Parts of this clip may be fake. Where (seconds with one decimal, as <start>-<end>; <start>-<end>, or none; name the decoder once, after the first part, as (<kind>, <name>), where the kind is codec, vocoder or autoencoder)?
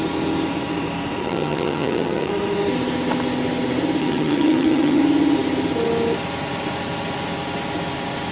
1.2-2.3 (vocoder, HiFi-GAN); 4.0-5.0